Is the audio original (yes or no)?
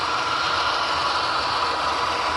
no